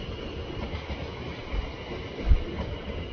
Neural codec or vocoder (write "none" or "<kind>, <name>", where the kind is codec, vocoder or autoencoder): none